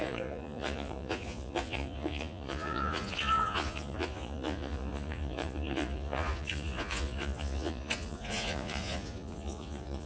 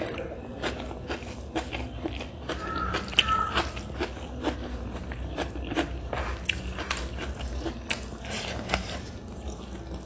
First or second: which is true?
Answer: second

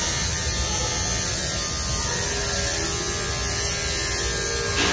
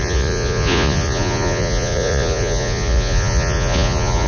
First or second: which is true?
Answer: first